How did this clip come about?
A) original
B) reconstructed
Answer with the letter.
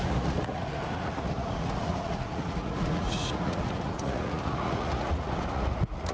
B